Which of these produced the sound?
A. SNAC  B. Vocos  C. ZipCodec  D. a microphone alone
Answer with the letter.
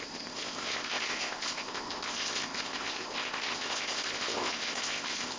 C